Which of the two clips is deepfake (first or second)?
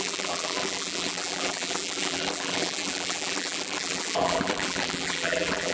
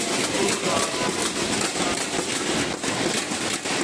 first